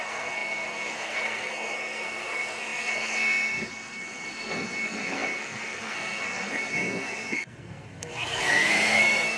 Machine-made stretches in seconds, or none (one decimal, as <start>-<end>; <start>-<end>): 0.0-9.4